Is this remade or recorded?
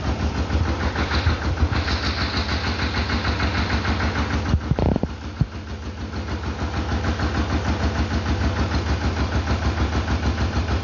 recorded